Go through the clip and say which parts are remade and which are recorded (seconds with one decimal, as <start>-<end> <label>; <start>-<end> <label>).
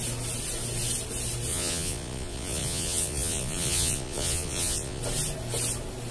0.0-1.5 recorded; 1.5-5.0 remade; 5.0-6.1 recorded